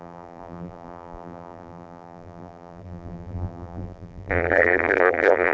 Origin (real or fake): fake